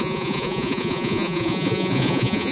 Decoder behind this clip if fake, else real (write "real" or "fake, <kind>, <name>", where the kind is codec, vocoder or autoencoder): fake, vocoder, Vocos